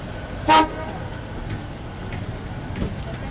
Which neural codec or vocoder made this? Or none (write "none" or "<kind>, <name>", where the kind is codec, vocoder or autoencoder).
none